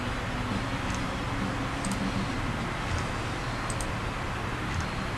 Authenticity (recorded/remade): recorded